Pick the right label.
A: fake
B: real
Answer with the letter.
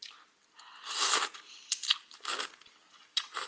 B